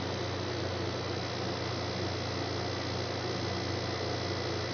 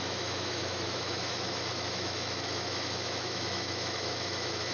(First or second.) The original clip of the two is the first